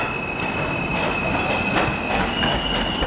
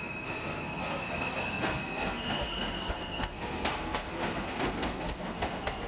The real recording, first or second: first